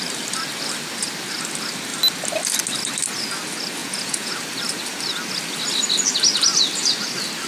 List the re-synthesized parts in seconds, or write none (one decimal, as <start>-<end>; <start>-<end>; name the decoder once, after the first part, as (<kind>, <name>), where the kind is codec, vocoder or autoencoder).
3.8-4.3 (vocoder, Vocos)